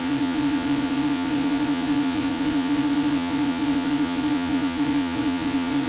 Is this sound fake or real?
fake